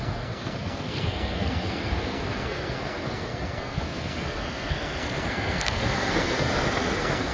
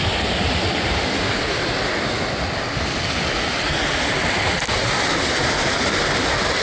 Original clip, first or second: second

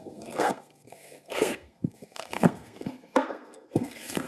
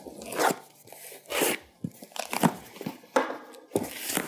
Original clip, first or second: second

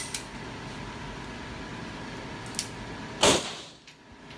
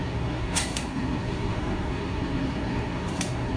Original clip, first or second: first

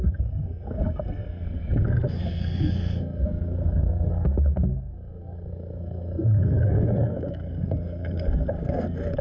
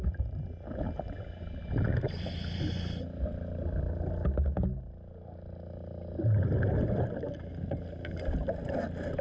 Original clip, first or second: second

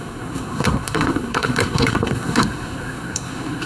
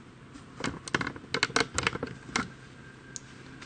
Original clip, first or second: second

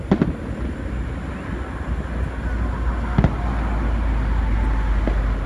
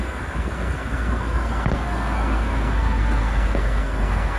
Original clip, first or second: first